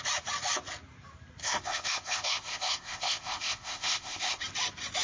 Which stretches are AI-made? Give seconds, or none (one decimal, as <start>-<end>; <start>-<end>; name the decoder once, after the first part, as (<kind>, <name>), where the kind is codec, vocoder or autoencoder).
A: 1.4-4.4 (codec, ZipCodec)